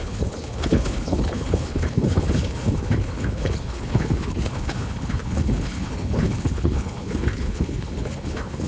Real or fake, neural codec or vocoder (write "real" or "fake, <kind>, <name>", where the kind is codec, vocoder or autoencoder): fake, codec, HILCodec